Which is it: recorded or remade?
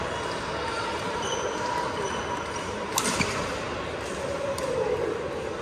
recorded